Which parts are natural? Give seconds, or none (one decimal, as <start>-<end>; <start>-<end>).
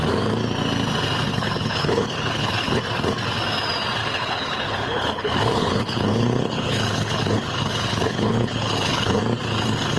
0.0-1.3; 2.8-4.0; 9.2-10.0